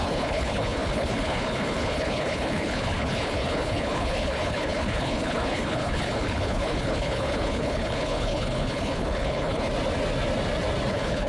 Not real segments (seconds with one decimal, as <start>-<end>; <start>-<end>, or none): 0.0-9.7; 10.9-11.3